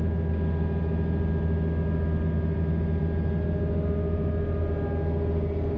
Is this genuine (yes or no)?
yes